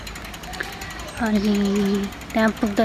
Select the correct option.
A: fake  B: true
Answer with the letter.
B